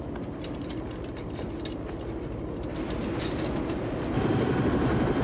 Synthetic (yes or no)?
no